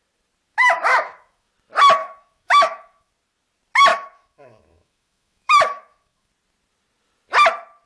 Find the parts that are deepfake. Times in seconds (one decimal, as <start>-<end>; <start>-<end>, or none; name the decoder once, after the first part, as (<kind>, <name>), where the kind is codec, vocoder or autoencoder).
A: 0.5-1.5 (autoencoder, DAC-VAE); 2.0-3.1; 3.9-6.3